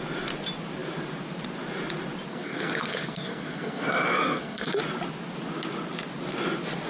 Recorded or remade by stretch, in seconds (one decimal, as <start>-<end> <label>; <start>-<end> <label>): 0.0-2.3 recorded; 2.3-4.8 remade; 4.8-6.9 recorded